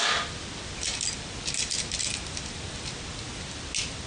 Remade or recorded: recorded